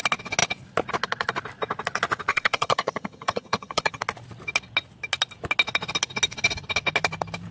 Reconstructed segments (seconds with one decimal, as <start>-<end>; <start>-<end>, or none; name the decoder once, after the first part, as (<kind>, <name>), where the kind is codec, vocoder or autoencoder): 2.3-4.0 (vocoder, HiFi-GAN)